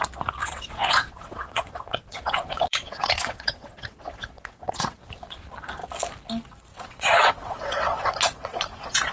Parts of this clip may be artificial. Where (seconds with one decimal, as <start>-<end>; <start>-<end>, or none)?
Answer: 0.4-5.1; 6.7-9.1